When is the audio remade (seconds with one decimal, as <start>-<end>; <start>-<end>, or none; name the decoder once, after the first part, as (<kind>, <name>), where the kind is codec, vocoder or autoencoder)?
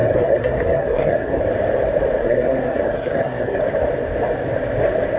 0.0-1.4 (codec, SNAC); 2.2-3.6